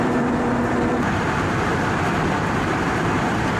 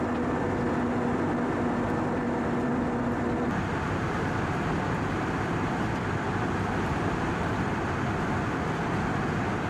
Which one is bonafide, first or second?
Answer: second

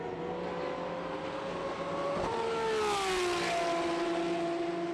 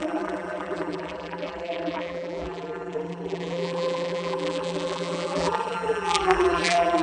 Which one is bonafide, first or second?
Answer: first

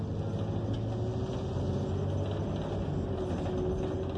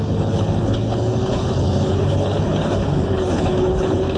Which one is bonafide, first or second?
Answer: first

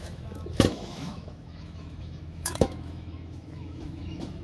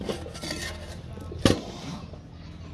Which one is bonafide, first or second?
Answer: second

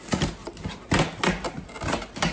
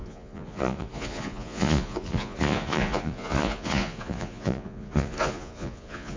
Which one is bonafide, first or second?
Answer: first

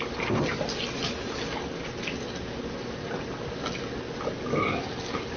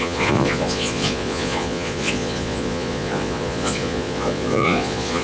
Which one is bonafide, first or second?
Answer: first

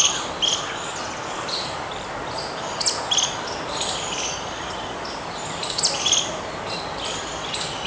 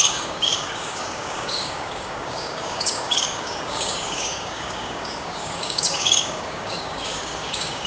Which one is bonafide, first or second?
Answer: first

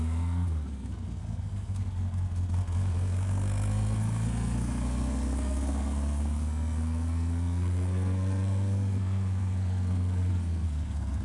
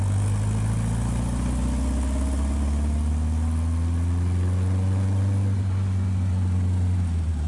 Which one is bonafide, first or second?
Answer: second